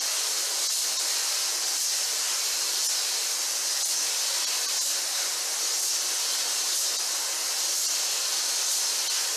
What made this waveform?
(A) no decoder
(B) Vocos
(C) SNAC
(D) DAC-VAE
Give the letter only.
A